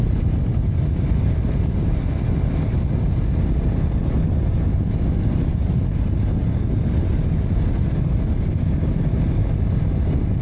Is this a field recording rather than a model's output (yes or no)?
yes